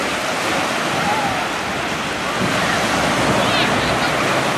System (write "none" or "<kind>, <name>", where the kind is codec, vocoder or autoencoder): none